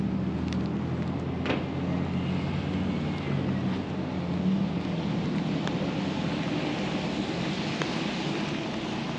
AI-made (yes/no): no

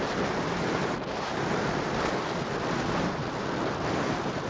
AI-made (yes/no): no